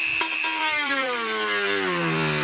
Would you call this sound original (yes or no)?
no